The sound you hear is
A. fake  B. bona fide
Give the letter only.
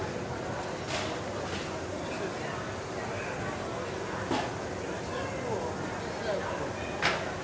B